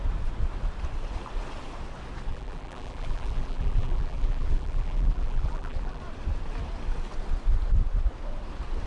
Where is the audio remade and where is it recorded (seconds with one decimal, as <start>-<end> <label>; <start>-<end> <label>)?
0.0-2.3 recorded; 2.3-6.0 remade; 6.0-8.9 recorded

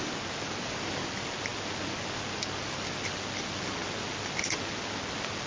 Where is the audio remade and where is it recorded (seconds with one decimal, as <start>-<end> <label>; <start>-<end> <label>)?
0.0-5.5 recorded

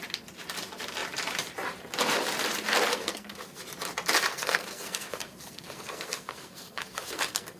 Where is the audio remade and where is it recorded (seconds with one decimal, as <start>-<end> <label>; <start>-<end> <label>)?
0.0-2.9 recorded; 2.9-3.6 remade; 3.6-4.3 recorded; 4.3-7.6 remade

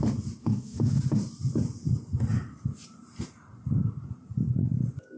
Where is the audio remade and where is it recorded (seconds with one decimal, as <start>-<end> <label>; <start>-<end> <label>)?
0.0-0.4 recorded; 0.4-1.0 remade; 1.0-5.2 recorded